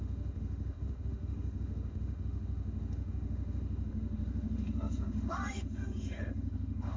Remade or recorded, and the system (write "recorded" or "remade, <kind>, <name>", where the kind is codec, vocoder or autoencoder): remade, autoencoder, DAC-VAE